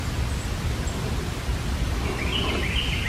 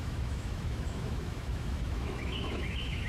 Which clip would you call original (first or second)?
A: first